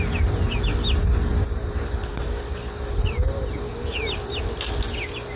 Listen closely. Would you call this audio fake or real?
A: real